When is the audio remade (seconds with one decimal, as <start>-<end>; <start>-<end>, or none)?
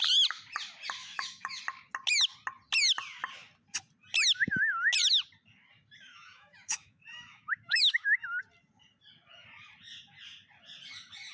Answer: 1.0-1.6; 6.1-8.4